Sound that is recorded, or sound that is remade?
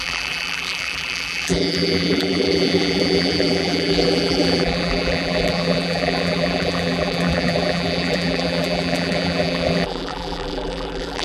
remade